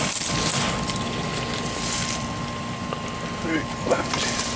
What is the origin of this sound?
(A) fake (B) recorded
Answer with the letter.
B